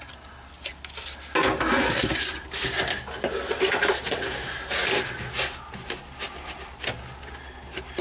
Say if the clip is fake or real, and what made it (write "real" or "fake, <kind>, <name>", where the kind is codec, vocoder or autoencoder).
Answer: real